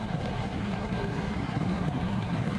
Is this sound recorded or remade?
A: remade